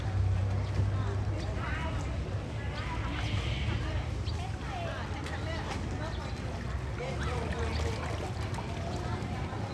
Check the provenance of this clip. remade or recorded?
recorded